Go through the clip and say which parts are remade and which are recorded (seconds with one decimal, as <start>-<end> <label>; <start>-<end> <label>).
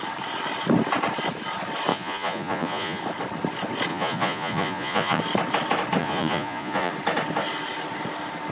0.0-1.9 recorded; 1.9-3.0 remade; 3.0-3.9 recorded; 3.9-5.2 remade; 5.2-6.0 recorded; 6.0-6.9 remade; 6.9-8.5 recorded